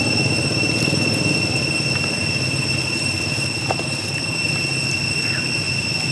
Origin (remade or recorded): recorded